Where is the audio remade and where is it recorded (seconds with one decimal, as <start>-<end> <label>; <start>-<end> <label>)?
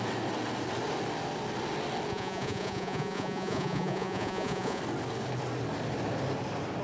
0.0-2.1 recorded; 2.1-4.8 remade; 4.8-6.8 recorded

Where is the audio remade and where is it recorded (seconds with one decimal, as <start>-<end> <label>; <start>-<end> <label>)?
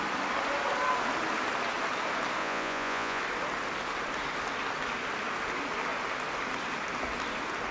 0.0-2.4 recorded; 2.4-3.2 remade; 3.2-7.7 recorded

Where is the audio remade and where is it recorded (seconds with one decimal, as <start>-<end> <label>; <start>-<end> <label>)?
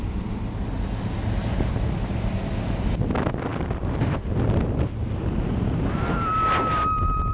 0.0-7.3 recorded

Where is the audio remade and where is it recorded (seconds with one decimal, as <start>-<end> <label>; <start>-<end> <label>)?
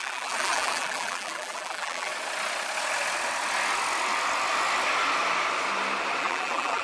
0.0-2.1 remade; 2.1-6.2 recorded; 6.2-6.8 remade